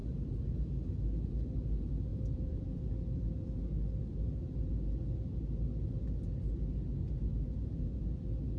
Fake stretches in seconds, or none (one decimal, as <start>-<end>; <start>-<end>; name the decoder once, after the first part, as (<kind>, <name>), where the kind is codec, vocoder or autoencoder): 2.1-2.9 (vocoder, Vocos); 7.3-8.0